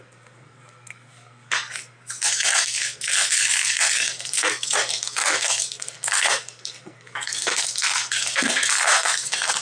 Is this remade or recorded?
remade